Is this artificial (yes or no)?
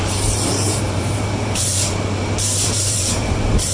yes